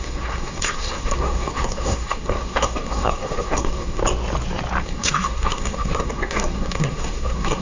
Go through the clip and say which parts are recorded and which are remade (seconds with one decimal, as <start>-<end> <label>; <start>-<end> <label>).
0.0-4.0 remade; 4.0-4.8 recorded; 4.8-7.6 remade